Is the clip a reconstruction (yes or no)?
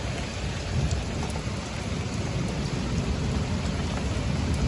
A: no